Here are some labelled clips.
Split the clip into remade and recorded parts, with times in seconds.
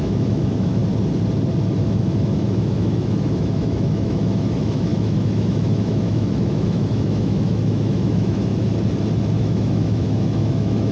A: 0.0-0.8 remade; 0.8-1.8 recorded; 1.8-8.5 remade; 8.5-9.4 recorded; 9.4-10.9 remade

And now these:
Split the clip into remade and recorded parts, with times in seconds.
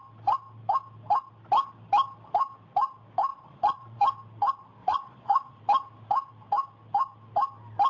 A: 0.0-3.3 recorded; 3.3-4.0 remade; 4.0-4.8 recorded; 4.8-5.6 remade; 5.6-7.9 recorded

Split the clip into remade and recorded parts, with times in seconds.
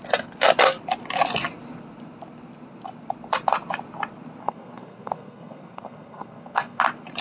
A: 0.0-4.4 recorded; 4.4-6.8 remade; 6.8-7.2 recorded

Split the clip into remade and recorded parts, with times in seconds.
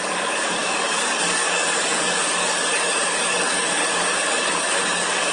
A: 0.0-5.3 remade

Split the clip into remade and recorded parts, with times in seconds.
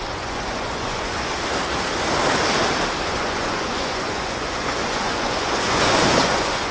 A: 0.0-1.3 remade; 1.3-3.0 recorded; 3.0-6.7 remade